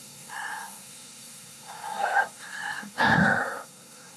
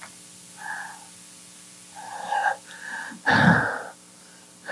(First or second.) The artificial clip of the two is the first